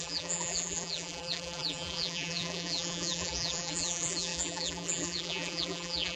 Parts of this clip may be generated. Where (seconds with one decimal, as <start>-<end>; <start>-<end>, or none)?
0.0-6.2